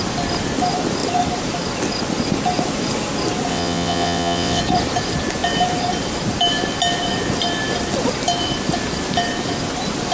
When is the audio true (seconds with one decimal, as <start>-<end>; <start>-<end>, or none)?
0.0-3.5; 4.6-10.1